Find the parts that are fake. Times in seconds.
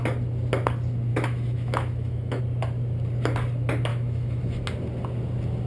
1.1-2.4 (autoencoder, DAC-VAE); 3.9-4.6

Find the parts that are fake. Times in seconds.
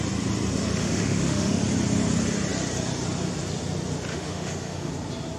0.8-1.6 (autoencoder, DAC-VAE); 4.1-4.9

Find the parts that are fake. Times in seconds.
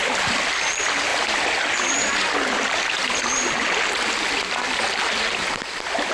none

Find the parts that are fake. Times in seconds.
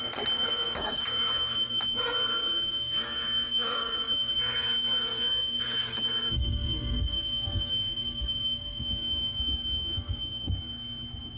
0.0-11.4 (codec, SNAC)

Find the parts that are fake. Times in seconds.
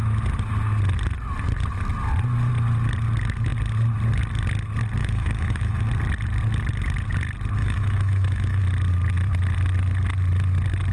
5.0-5.9 (autoencoder, DAC-VAE); 7.6-8.6